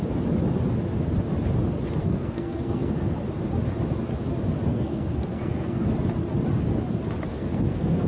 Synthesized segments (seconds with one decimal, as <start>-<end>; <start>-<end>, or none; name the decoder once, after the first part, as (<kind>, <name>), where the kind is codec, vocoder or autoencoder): 2.0-3.2 (codec, SNAC); 4.7-5.9; 7.3-8.1